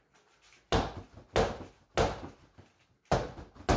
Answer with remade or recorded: recorded